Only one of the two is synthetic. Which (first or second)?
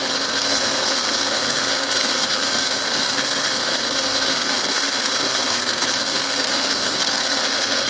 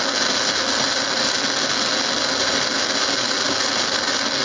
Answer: first